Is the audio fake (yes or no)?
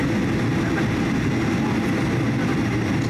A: no